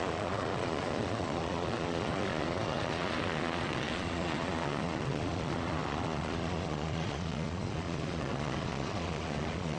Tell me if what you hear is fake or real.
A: fake